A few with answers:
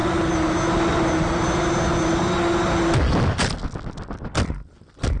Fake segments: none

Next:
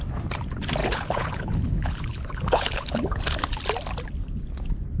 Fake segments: 0.8-3.2 (codec, HILCodec)

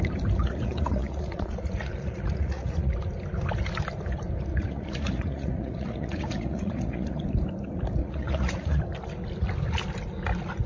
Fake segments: 0.4-2.9 (vocoder, Vocos); 4.5-7.2; 8.0-8.8

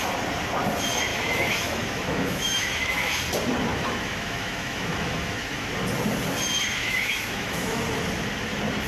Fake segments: 1.1-3.2 (autoencoder, DAC-VAE); 3.7-5.7; 6.8-7.8

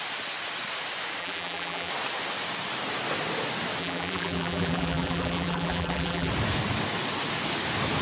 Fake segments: 1.2-1.9 (vocoder, BigVGAN v2); 3.8-6.3